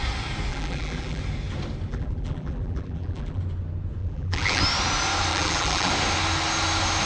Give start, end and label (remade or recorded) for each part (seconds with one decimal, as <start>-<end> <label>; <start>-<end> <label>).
0.0-0.5 recorded; 0.5-1.2 remade; 1.2-1.9 recorded; 1.9-3.4 remade; 3.4-4.0 recorded; 4.0-4.6 remade; 4.6-5.3 recorded; 5.3-5.9 remade; 5.9-7.1 recorded